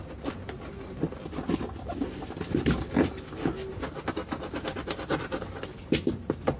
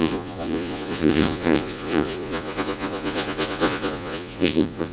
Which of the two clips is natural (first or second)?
first